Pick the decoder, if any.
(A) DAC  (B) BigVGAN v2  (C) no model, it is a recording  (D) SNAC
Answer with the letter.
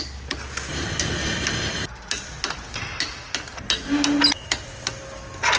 C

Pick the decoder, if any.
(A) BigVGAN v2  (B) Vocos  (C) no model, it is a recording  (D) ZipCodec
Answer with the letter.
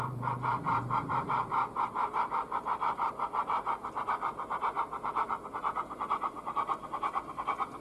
A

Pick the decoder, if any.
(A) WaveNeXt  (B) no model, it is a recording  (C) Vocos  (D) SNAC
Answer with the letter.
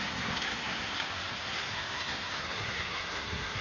D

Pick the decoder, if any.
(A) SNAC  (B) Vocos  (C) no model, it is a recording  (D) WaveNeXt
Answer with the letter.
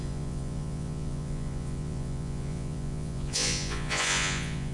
B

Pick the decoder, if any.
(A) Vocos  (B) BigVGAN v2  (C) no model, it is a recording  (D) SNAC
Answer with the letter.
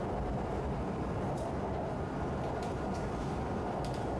B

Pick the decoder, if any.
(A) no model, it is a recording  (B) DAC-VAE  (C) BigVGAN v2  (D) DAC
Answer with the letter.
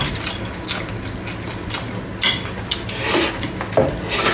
A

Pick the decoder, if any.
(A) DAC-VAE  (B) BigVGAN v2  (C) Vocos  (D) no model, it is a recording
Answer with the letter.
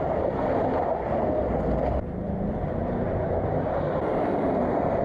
B